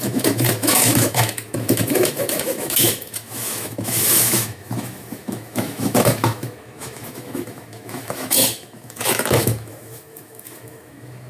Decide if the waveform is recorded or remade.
remade